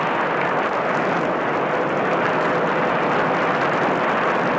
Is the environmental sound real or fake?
real